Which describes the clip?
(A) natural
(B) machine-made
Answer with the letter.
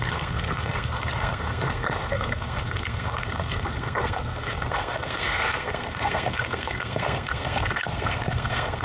B